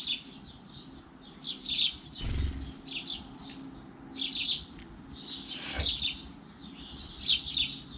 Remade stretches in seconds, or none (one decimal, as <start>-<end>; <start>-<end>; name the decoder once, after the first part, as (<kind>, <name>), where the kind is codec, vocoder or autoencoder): none